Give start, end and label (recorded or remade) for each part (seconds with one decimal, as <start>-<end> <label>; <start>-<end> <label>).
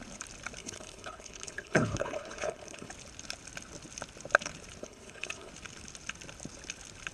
0.0-0.6 recorded; 0.6-2.9 remade; 2.9-4.8 recorded; 4.8-5.5 remade; 5.5-7.1 recorded